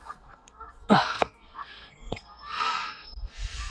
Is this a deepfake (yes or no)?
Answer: yes